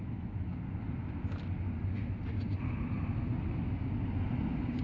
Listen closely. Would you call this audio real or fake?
real